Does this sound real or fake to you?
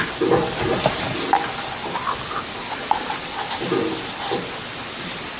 real